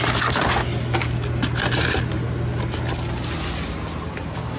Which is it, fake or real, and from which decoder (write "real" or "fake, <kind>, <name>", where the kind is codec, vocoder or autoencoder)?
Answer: real